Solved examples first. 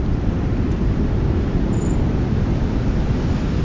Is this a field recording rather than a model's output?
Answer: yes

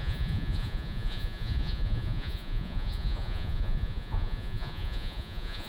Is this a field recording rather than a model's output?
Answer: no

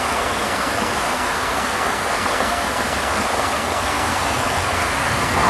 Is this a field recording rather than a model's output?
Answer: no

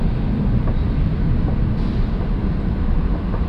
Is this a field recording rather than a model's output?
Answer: yes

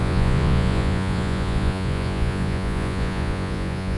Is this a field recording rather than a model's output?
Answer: no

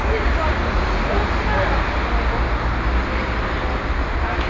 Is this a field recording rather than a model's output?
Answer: yes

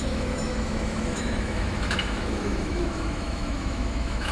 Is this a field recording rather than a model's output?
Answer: no